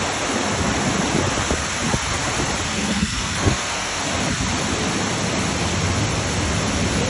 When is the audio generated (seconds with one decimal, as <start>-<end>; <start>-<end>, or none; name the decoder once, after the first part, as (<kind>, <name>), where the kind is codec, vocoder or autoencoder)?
2.7-4.0 (codec, SNAC)